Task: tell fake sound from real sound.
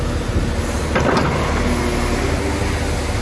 real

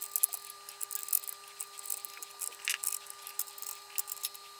real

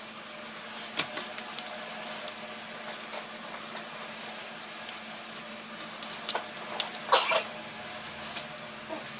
real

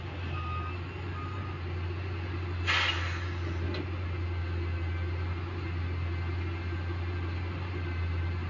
real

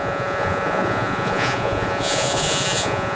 fake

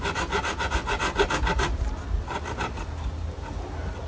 real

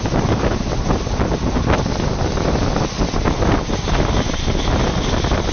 real